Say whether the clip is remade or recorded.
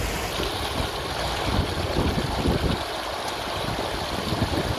recorded